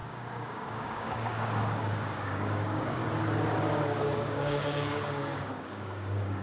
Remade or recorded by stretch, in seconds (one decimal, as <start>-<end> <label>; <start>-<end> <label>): 0.0-3.0 remade; 3.0-3.6 recorded; 3.6-6.4 remade